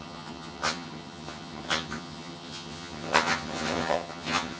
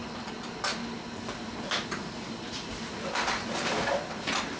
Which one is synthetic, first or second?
first